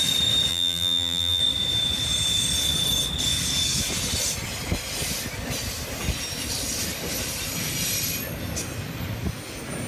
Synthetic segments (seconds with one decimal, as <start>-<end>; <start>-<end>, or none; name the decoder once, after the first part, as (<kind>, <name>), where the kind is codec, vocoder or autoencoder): 0.5-1.4 (vocoder, BigVGAN v2)